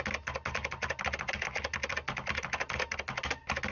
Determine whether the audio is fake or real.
real